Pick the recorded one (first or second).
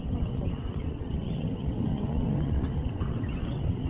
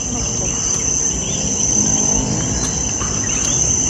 second